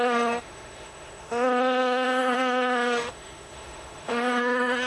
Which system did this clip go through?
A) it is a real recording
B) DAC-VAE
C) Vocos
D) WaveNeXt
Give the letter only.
B